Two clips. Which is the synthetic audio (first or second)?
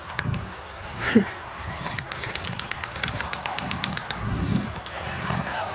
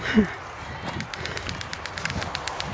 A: first